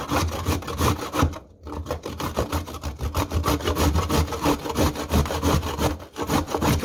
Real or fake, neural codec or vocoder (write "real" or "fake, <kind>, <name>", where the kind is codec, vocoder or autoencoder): real